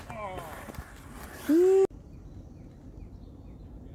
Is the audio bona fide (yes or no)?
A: yes